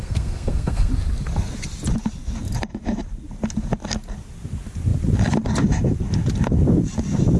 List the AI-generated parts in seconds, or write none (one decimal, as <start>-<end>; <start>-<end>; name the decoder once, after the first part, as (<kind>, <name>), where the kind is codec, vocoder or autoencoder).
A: 0.0-0.9 (codec, SNAC)